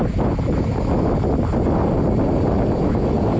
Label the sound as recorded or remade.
recorded